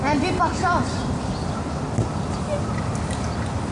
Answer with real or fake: real